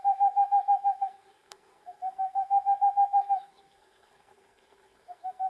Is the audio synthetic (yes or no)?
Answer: yes